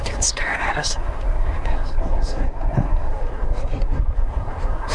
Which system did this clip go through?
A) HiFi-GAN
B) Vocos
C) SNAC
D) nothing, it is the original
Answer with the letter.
C